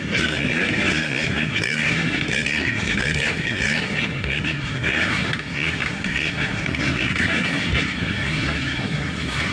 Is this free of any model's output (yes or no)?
no